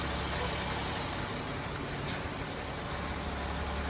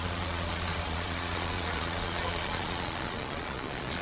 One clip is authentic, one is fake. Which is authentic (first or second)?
first